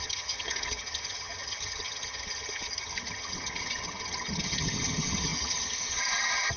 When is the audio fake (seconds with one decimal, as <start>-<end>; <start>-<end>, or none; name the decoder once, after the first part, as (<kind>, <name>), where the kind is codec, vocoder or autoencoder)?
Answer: 0.0-6.6 (vocoder, HiFi-GAN)